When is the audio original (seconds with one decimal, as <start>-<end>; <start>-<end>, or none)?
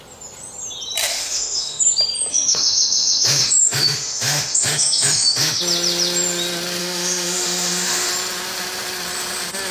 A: 0.0-1.0; 1.8-2.3; 5.6-6.8; 8.1-9.7